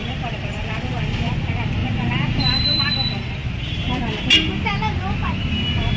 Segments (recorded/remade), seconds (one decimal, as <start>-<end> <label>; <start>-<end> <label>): 0.0-1.3 remade; 1.3-1.8 recorded; 1.8-2.8 remade; 2.8-3.4 recorded; 3.4-4.0 remade; 4.0-6.0 recorded